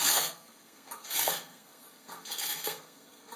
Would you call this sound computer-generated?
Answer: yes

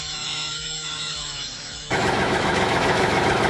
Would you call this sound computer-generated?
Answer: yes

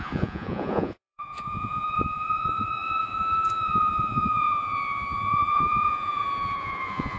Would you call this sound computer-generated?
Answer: yes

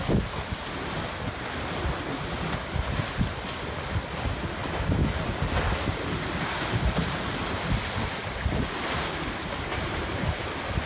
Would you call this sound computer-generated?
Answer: no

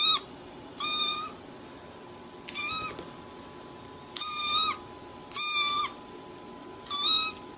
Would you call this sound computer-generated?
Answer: no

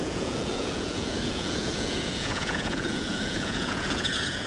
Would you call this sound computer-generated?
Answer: yes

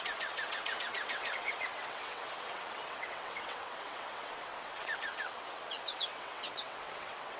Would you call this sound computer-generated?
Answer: yes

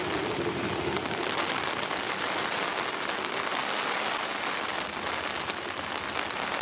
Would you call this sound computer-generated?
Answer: no